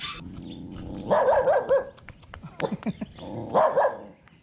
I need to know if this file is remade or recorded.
recorded